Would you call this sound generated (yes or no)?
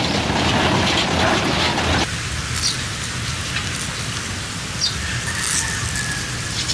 no